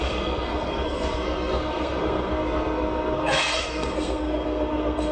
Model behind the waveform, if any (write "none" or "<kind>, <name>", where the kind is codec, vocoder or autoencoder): codec, SNAC